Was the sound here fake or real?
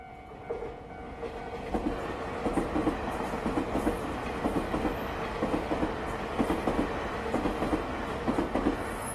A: real